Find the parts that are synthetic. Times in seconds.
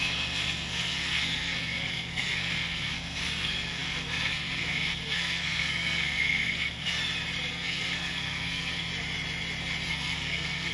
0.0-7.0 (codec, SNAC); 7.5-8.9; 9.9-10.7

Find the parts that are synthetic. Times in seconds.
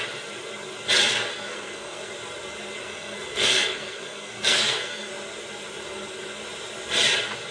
1.3-2.1 (codec, SNAC); 2.8-5.1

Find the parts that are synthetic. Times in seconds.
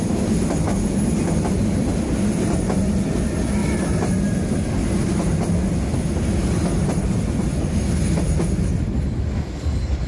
none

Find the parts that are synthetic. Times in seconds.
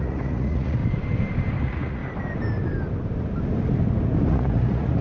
0.0-0.8 (vocoder, Vocos); 1.6-2.0; 4.3-5.0